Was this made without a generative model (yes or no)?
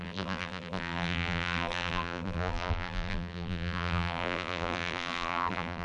no